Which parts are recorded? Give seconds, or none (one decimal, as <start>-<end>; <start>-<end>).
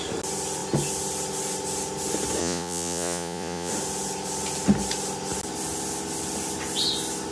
0.0-2.4; 3.7-7.3